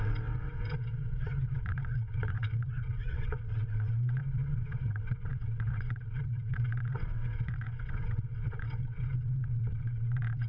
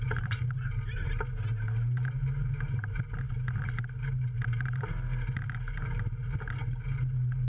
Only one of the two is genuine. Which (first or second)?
second